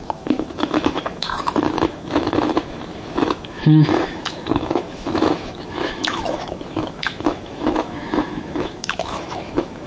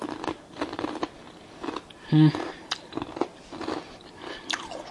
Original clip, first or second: second